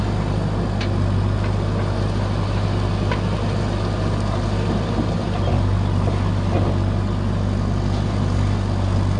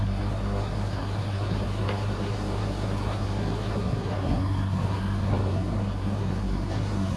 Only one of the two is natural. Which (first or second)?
first